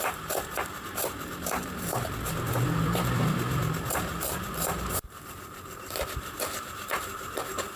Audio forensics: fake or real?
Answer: fake